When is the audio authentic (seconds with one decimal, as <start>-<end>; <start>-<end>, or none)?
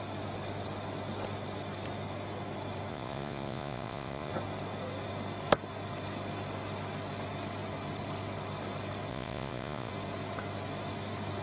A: 0.0-2.9; 4.3-9.1; 9.9-11.4